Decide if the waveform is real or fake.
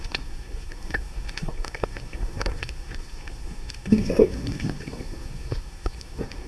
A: fake